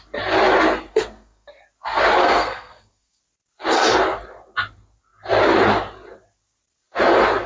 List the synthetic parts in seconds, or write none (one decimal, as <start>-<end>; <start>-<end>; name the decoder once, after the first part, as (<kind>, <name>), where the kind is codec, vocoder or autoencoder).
0.9-1.6 (codec, SNAC); 2.2-3.2